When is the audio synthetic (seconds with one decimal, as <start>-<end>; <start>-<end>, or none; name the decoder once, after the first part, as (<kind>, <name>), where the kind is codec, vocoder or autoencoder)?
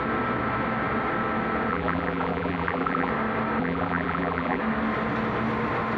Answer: 1.7-3.1 (vocoder, BigVGAN v2); 3.6-4.6